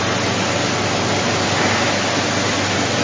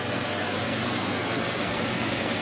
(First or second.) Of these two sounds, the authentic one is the first